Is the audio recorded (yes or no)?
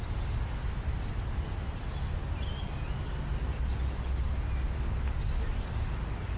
yes